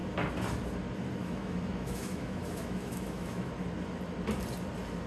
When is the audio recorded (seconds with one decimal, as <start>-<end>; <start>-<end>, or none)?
0.0-1.2; 3.5-5.1